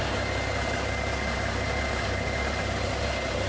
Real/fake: real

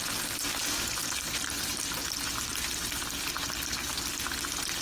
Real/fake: real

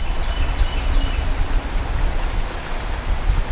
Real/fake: real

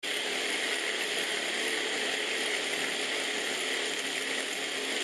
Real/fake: real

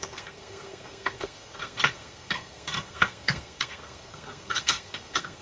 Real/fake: fake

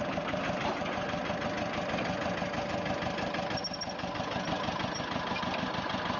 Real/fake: real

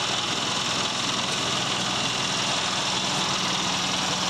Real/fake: real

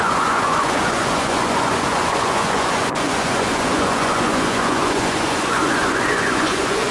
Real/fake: fake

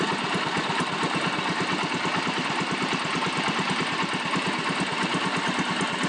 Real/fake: real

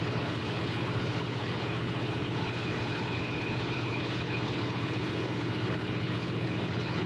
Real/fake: fake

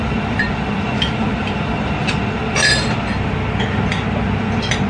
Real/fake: real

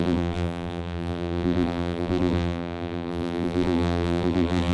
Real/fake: fake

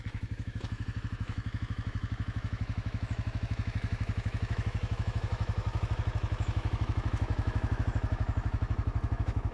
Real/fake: fake